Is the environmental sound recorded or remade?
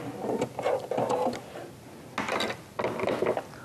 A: recorded